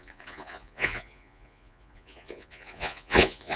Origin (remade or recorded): remade